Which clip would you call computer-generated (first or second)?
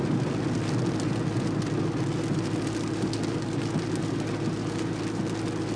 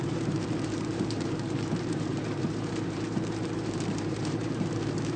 second